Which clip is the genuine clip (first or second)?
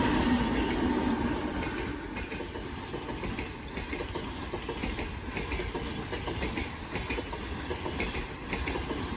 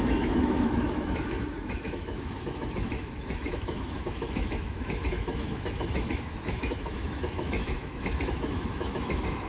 first